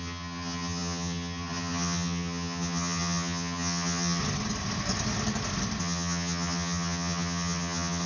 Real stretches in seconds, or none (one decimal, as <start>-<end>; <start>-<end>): 4.2-5.8